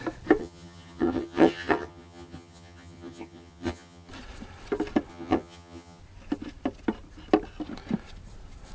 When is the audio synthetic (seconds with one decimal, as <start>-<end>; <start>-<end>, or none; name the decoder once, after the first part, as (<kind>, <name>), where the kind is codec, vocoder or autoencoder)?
0.4-4.1 (vocoder, HiFi-GAN); 5.1-6.0